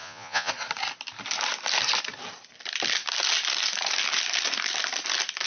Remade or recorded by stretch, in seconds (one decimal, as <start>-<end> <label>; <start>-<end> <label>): 0.0-0.5 remade; 0.5-5.5 recorded